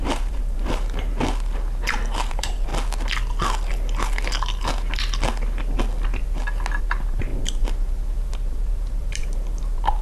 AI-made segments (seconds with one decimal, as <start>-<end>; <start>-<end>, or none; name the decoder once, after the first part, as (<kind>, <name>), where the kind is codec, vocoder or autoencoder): 0.0-1.1 (vocoder, BigVGAN v2); 2.3-2.7; 6.8-10.0